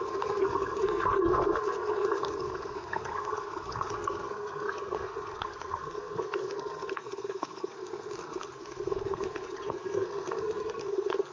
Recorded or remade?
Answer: remade